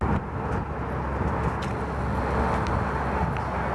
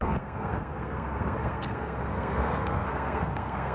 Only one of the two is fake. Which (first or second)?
second